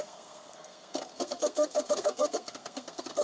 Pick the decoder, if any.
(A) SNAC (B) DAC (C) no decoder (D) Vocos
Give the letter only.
A